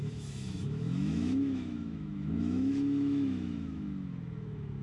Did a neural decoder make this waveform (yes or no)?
yes